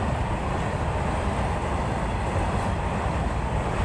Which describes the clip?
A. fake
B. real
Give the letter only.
B